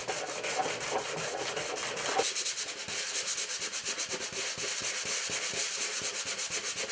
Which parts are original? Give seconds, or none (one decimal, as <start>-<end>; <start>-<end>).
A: 0.0-6.9